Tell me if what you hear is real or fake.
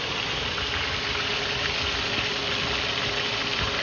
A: real